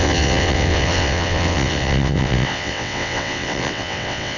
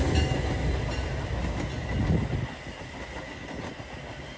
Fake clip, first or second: first